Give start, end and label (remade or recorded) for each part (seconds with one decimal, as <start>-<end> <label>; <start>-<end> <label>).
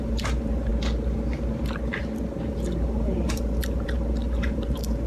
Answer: 0.0-0.7 remade; 0.7-2.5 recorded; 2.5-5.1 remade